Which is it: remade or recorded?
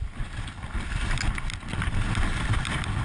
recorded